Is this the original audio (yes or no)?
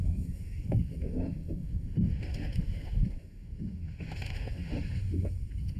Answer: no